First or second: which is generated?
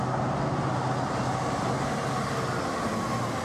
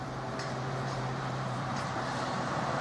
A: second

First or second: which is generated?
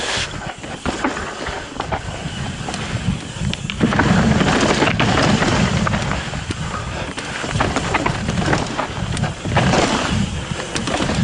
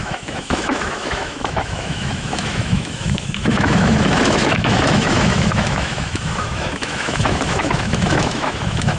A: second